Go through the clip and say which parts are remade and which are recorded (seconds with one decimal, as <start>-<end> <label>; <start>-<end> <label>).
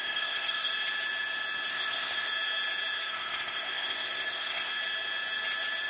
0.0-0.7 remade; 0.7-1.7 recorded; 1.7-2.3 remade; 2.3-3.1 recorded; 3.1-4.7 remade; 4.7-5.9 recorded